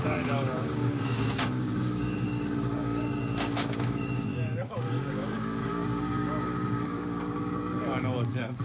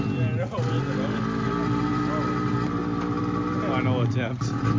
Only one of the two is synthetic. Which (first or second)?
first